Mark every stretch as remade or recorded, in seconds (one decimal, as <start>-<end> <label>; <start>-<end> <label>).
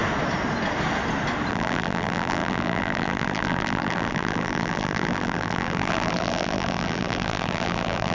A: 0.0-1.5 recorded; 1.5-8.1 remade